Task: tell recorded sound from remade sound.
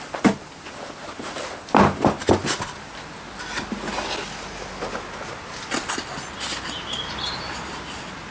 recorded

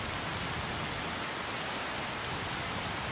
recorded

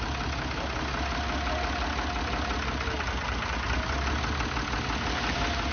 recorded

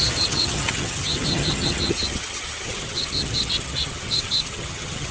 remade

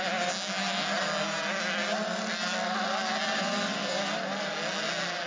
recorded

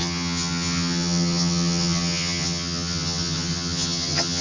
remade